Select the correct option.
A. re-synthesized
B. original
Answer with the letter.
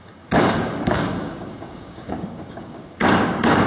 A